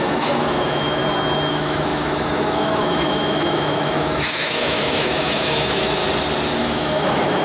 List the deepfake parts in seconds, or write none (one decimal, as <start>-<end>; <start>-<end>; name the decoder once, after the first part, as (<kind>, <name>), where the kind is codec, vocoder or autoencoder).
0.0-1.0 (autoencoder, DAC-VAE); 1.5-6.0; 6.6-7.4